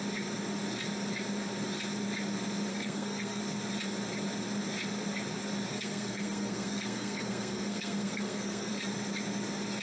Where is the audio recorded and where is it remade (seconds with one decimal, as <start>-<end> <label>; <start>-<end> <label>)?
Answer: 0.0-2.7 recorded; 2.7-3.4 remade; 3.4-5.7 recorded; 5.7-8.7 remade; 8.7-9.8 recorded

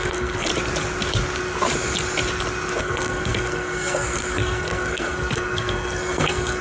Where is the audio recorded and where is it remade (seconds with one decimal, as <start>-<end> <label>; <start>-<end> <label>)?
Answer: 0.0-0.5 remade; 0.5-2.8 recorded; 2.8-6.6 remade

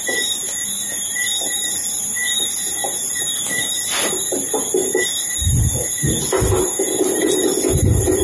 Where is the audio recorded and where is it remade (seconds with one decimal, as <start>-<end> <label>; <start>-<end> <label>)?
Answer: 0.0-8.2 recorded

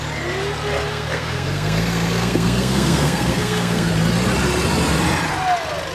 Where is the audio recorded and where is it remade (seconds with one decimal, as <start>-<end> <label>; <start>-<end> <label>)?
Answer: 0.0-0.9 recorded; 0.9-3.9 remade; 3.9-5.9 recorded

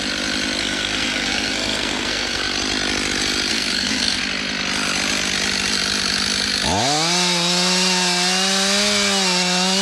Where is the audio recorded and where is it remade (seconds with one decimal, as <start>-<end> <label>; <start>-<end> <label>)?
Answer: 0.0-0.6 recorded; 0.6-2.4 remade; 2.4-3.5 recorded; 3.5-4.2 remade; 4.2-9.8 recorded

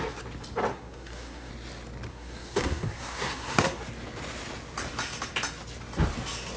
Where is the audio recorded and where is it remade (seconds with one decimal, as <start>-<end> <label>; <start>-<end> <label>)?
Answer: 0.0-0.7 recorded; 0.7-1.5 remade; 1.5-2.1 recorded; 2.1-3.8 remade; 3.8-6.6 recorded